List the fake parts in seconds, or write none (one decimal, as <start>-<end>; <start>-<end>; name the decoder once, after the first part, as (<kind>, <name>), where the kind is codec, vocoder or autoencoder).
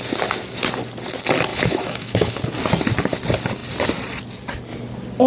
1.5-2.4 (autoencoder, DAC-VAE)